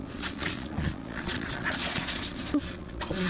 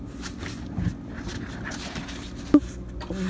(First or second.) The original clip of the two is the second